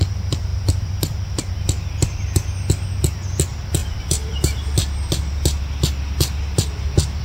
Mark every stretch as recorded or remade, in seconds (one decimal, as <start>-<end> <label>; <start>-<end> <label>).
0.0-0.5 recorded; 0.5-1.5 remade; 1.5-3.8 recorded; 3.8-4.6 remade; 4.6-7.2 recorded